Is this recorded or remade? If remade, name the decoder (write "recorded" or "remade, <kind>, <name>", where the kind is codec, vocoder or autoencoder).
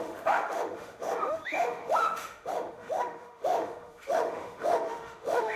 remade, autoencoder, DAC-VAE